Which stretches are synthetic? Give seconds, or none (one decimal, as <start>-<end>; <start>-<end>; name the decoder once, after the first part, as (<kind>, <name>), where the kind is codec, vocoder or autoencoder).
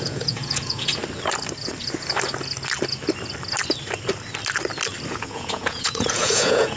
0.0-1.0 (vocoder, Vocos); 5.1-6.8